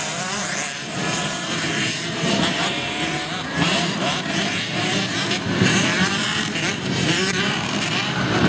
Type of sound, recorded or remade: remade